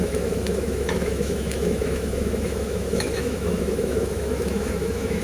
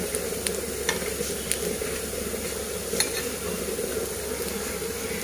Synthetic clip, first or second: first